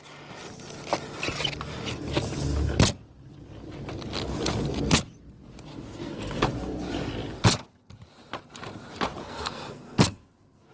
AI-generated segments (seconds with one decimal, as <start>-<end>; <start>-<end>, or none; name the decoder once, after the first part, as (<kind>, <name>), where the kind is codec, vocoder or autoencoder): 5.7-6.4 (codec, SNAC); 9.2-10.7